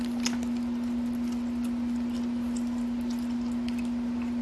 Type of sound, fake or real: real